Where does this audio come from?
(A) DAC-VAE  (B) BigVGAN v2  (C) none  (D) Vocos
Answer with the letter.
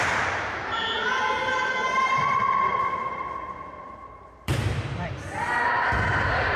B